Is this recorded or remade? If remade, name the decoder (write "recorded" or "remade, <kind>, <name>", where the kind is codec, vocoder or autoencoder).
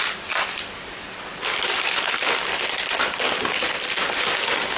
recorded